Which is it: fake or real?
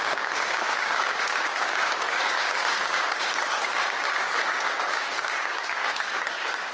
fake